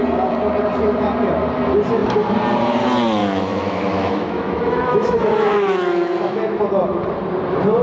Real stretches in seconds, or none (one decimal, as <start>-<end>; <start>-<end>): 0.0-3.2; 6.6-7.8